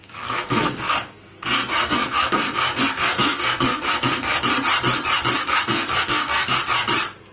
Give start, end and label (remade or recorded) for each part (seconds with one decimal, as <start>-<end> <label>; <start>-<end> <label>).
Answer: 0.0-4.4 remade; 4.4-5.4 recorded; 5.4-6.6 remade; 6.6-7.3 recorded